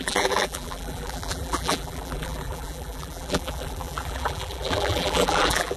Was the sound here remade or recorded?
remade